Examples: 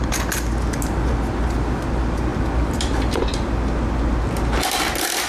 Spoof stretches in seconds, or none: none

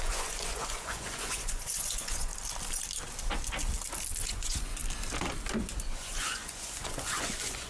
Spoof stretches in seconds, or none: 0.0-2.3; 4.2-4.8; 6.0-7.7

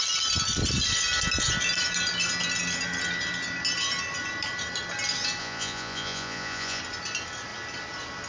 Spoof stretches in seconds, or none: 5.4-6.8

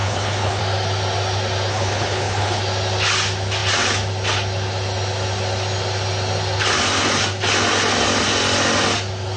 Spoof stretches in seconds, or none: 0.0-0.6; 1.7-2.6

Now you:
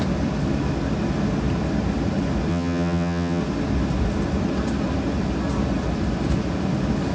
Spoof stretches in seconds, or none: 2.5-3.4

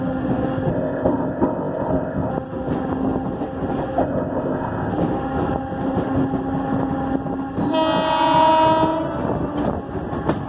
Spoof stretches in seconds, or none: 0.7-2.3; 4.0-4.9

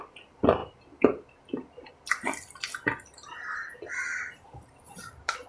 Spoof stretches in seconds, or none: 0.0-0.6; 1.9-5.5